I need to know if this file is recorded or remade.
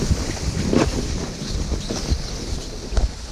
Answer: recorded